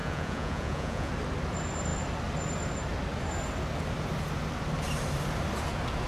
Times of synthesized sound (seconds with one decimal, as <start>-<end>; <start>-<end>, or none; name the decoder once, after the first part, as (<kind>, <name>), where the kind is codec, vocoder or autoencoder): 0.0-1.1 (vocoder, Vocos)